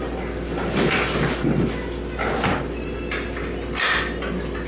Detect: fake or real real